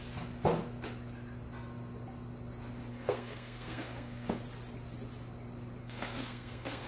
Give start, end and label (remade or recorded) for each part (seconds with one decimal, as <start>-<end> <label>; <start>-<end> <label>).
0.0-2.9 recorded; 2.9-4.4 remade; 4.4-5.8 recorded; 5.8-6.9 remade